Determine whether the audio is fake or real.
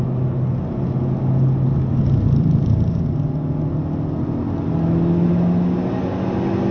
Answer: real